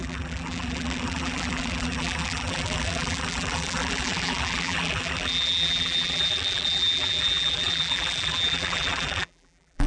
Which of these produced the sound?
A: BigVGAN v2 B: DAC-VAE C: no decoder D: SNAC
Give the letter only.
A